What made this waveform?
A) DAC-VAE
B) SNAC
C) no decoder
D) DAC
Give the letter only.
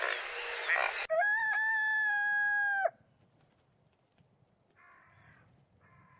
C